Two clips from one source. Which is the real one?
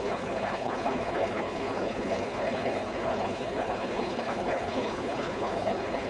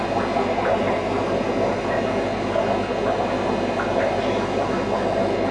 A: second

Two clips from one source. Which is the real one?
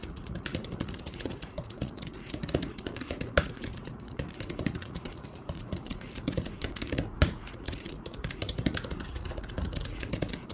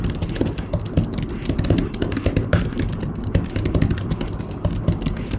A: second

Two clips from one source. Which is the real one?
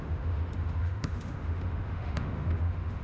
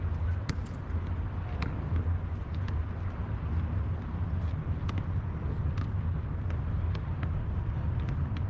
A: second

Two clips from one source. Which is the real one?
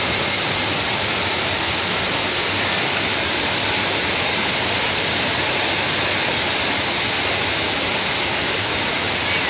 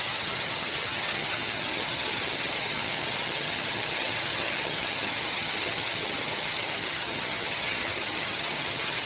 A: first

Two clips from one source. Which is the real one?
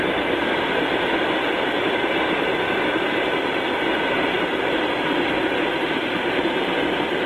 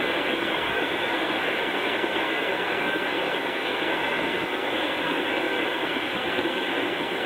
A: first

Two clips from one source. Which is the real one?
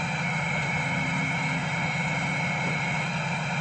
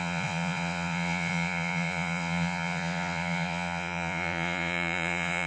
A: first